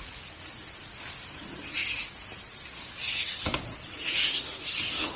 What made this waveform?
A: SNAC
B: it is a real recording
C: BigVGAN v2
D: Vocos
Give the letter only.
B